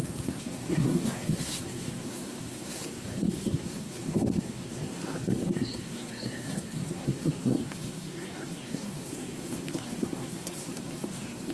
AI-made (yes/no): yes